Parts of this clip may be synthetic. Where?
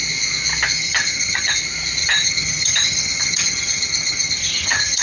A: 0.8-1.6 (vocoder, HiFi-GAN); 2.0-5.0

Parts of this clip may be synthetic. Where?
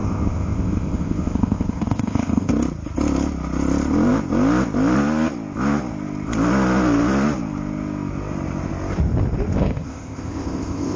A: 0.0-2.5 (codec, ZipCodec); 9.6-11.0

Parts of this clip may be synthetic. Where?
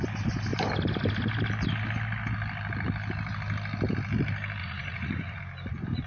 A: 4.6-5.4 (vocoder, Vocos)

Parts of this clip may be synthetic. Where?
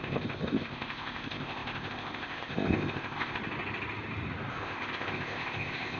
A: 0.0-3.4 (codec, ZipCodec); 4.5-6.0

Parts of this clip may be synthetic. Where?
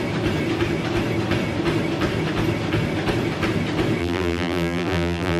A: 4.0-5.4 (vocoder, BigVGAN v2)